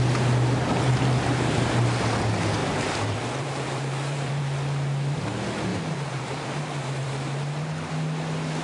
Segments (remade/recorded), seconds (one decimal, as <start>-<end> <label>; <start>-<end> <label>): 0.0-2.6 recorded; 2.6-4.4 remade; 4.4-5.7 recorded; 5.7-7.9 remade; 7.9-8.6 recorded